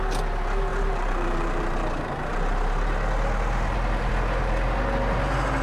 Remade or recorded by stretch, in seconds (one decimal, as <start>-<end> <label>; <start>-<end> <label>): 0.0-0.7 recorded; 0.7-4.1 remade; 4.1-5.6 recorded